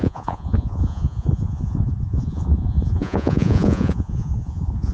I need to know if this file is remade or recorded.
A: remade